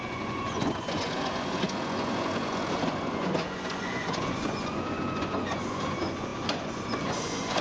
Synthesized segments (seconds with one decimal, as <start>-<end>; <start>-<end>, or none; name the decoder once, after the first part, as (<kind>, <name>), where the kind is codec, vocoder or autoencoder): 0.0-7.6 (vocoder, Vocos)